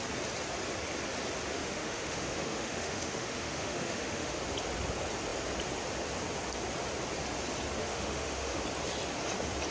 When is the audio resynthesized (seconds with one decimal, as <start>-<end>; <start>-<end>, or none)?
1.6-4.4; 7.8-8.6